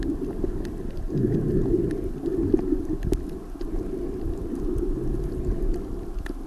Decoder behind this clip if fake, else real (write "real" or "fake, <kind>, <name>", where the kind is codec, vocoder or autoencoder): real